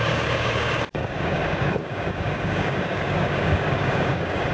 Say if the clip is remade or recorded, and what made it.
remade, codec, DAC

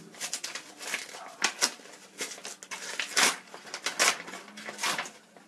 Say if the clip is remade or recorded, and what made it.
recorded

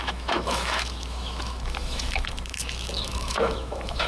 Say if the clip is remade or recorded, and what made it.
remade, autoencoder, DAC-VAE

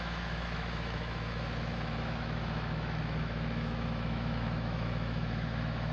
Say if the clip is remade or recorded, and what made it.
remade, autoencoder, DAC-VAE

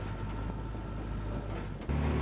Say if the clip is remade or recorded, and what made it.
recorded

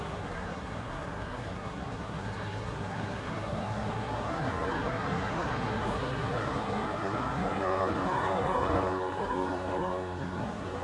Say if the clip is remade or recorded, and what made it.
remade, codec, SNAC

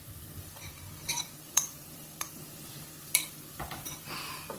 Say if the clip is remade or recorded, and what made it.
remade, vocoder, BigVGAN v2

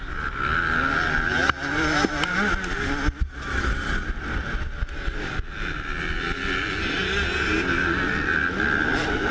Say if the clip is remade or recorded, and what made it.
recorded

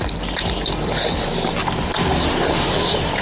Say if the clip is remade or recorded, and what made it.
remade, vocoder, BigVGAN v2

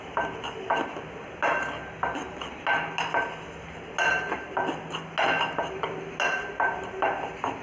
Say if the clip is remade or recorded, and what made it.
recorded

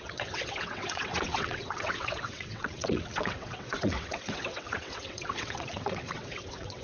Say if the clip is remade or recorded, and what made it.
remade, vocoder, WaveNeXt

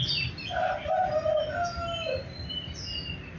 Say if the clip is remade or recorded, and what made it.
recorded